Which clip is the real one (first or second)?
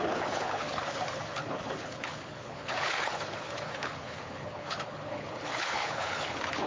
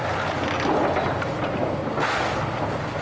second